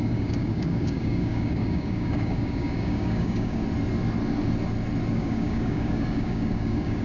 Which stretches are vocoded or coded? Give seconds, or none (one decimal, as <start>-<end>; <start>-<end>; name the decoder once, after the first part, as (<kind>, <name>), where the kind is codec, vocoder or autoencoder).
0.0-3.6 (codec, DAC); 5.1-7.0